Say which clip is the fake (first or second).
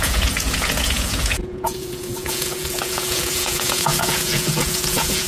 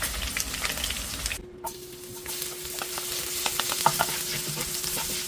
first